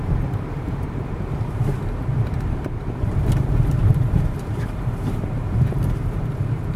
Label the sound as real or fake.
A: fake